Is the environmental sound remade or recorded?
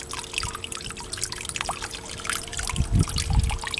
recorded